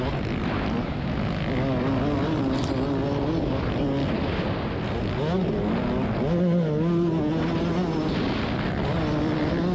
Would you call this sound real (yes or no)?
yes